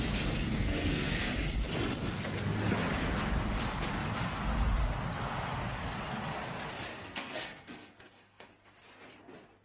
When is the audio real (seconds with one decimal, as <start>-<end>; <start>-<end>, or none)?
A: 0.0-0.5; 1.3-6.9; 8.5-9.6